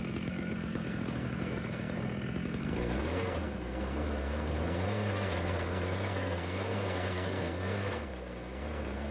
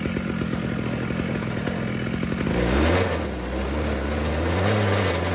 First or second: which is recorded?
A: second